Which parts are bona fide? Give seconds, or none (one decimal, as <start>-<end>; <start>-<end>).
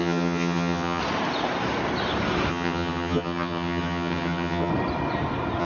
1.0-2.5; 4.7-5.6